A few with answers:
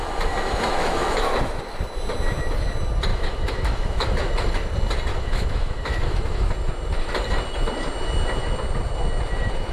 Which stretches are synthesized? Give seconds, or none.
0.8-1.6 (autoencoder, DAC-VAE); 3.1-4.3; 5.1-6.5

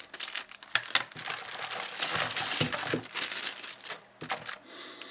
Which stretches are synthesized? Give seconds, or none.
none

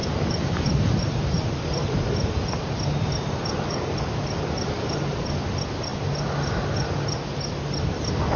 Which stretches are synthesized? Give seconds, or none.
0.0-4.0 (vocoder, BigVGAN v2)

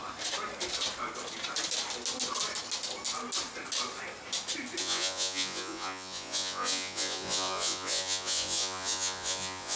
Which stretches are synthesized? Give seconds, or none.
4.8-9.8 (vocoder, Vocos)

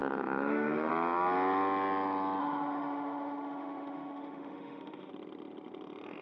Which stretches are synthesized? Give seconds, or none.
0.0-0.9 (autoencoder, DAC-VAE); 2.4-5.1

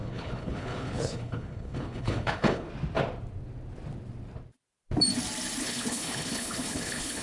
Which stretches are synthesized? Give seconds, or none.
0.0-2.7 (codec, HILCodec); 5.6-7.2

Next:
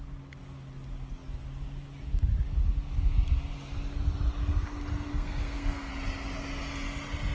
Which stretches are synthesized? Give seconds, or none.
5.1-5.9 (codec, SNAC)